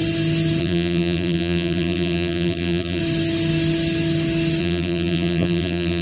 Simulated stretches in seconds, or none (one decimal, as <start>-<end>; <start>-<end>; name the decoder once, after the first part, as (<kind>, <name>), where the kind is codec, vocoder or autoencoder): 0.6-3.0 (vocoder, BigVGAN v2); 4.6-6.0

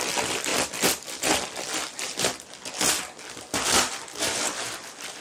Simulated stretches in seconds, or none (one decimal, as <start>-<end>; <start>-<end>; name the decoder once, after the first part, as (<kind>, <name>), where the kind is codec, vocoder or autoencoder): none